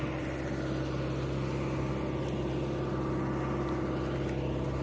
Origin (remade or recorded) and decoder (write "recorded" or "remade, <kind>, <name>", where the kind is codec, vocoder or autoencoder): recorded